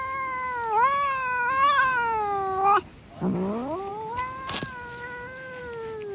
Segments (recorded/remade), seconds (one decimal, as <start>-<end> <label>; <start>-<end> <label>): 0.0-6.1 recorded